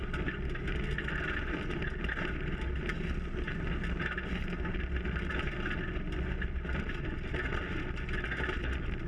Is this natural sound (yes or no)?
yes